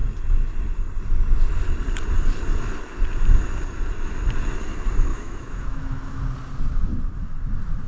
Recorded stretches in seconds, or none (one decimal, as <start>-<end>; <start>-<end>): 0.0-5.1; 6.2-7.9

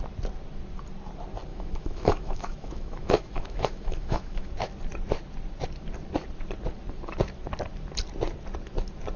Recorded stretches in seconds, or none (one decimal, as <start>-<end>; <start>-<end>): 0.0-1.5; 4.5-9.2

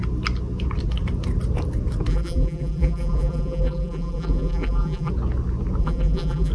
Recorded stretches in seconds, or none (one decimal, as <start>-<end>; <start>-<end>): 0.0-2.1; 5.1-5.8

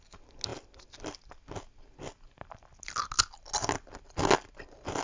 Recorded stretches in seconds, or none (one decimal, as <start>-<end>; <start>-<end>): 0.0-5.0

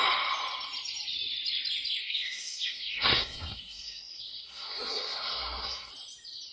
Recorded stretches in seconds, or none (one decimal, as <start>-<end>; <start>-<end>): 0.0-2.0; 5.9-6.5

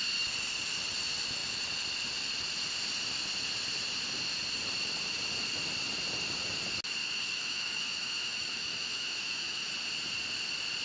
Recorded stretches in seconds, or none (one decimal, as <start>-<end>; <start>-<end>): 0.0-7.0; 9.7-10.8